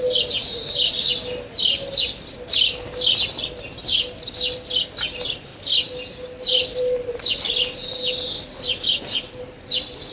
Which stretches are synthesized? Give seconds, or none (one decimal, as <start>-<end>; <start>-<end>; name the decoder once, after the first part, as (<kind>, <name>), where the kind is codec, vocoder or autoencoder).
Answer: none